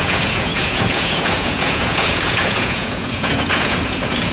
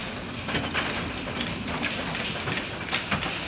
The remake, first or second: first